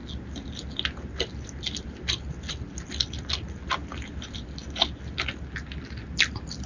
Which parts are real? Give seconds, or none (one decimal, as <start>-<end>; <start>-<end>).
0.0-3.7; 4.6-6.7